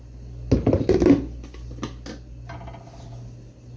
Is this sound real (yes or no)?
yes